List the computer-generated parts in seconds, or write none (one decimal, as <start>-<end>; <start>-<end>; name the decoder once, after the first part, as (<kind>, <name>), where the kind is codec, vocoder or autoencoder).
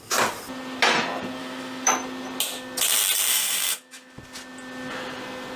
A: 1.4-1.9 (autoencoder, DAC-VAE); 3.3-4.2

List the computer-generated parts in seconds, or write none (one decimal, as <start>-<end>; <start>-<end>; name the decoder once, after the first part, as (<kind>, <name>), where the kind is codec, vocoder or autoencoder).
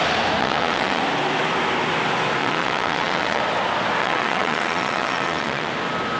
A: 0.4-1.0 (vocoder, WaveNeXt); 2.4-3.4; 4.0-5.7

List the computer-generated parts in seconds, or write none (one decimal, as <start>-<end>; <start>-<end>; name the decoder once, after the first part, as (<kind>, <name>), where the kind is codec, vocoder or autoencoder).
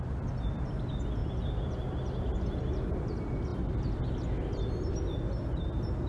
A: 3.5-4.0 (vocoder, BigVGAN v2)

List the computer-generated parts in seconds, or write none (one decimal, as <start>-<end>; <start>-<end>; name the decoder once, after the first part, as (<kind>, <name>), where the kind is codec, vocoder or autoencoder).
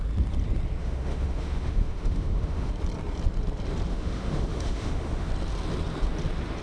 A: 0.8-2.7 (autoencoder, DAC-VAE); 3.9-5.3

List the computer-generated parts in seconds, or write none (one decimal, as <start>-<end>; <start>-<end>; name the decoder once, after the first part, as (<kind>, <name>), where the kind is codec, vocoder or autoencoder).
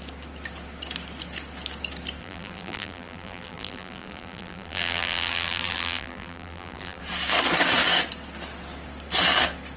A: 2.2-7.0 (vocoder, BigVGAN v2)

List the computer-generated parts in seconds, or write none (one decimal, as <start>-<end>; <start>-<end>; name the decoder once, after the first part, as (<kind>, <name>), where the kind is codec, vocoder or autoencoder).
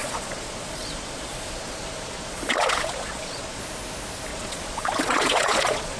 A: 0.0-3.6 (vocoder, Vocos); 4.3-6.0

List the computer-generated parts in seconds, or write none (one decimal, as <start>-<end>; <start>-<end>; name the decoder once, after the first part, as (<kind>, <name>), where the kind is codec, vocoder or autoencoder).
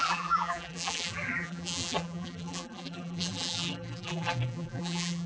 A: 0.0-5.3 (vocoder, BigVGAN v2)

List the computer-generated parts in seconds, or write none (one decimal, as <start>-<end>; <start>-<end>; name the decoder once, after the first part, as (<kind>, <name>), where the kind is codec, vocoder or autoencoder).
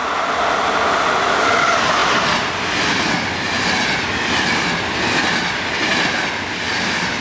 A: none